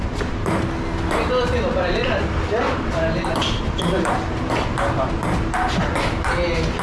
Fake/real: real